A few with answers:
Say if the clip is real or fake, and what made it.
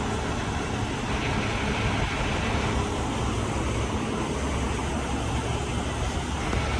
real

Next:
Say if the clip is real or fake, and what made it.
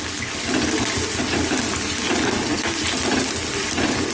real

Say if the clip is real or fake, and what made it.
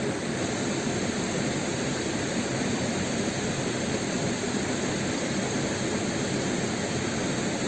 real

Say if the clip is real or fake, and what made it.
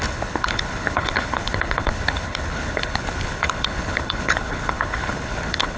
fake, codec, HILCodec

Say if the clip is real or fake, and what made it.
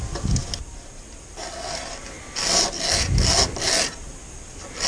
real